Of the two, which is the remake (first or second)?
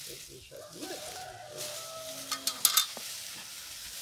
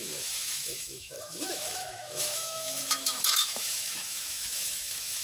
second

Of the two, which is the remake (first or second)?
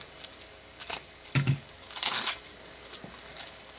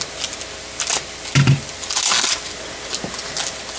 first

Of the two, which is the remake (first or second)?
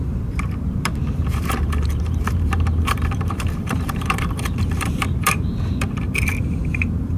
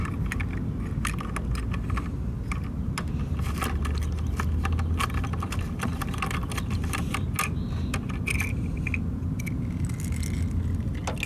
first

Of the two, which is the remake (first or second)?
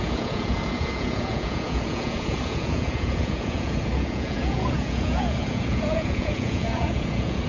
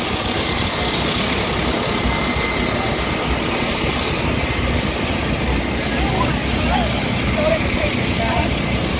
first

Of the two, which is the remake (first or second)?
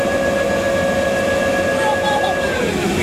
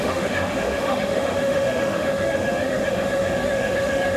second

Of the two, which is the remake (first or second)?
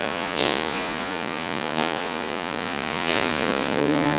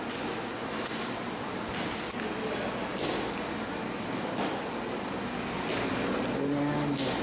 first